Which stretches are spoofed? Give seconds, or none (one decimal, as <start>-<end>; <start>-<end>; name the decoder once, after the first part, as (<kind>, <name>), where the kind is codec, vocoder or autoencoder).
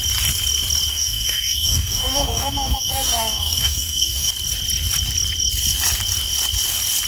0.9-4.3 (codec, DAC)